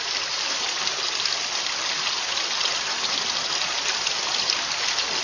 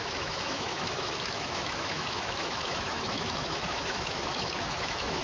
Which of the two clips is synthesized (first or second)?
second